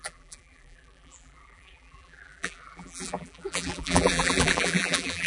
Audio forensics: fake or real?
fake